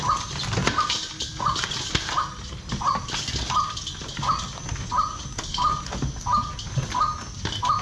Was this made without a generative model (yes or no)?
yes